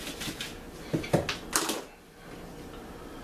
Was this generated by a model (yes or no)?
no